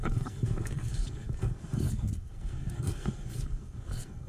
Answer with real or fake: fake